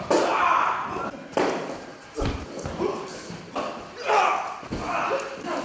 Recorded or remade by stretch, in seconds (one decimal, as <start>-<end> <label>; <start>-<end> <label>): 0.0-5.6 recorded

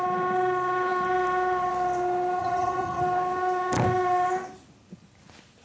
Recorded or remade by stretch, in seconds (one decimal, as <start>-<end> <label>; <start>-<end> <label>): 0.0-2.4 recorded; 2.4-3.0 remade; 3.0-5.6 recorded